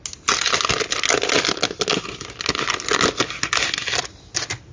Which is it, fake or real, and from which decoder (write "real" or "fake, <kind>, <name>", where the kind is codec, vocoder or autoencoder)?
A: real